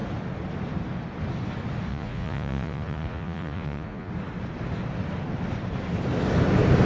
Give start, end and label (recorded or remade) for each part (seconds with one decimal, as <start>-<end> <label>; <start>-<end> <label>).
0.0-1.9 recorded; 1.9-4.1 remade; 4.1-6.8 recorded